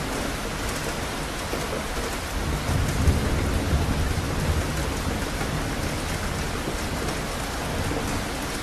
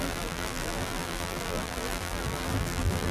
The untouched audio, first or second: first